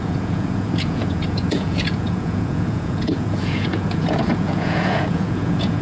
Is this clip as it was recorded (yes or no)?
no